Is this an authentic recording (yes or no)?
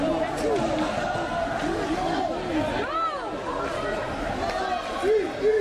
yes